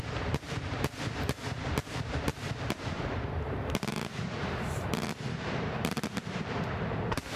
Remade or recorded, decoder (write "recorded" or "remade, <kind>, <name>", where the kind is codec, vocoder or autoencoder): remade, vocoder, BigVGAN v2